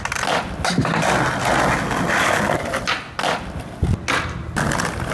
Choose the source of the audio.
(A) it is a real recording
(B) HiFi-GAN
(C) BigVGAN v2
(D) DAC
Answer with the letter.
A